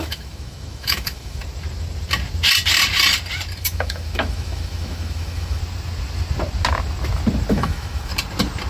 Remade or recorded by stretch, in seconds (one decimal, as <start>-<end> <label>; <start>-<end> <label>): 0.0-1.4 remade; 1.4-3.6 recorded; 3.6-5.6 remade; 5.6-7.5 recorded; 7.5-8.1 remade; 8.1-8.7 recorded